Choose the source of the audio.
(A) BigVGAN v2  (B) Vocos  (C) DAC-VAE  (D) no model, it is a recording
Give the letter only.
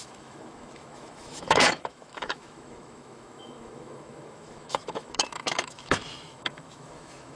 C